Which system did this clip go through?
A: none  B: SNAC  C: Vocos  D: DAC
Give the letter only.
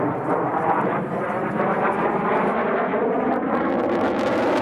A